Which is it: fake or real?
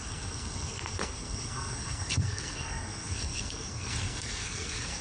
fake